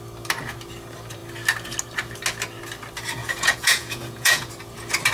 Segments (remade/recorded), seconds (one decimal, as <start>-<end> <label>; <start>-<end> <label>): 0.0-3.2 recorded; 3.2-4.5 remade; 4.5-5.1 recorded